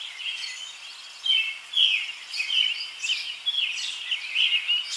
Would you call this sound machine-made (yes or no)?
no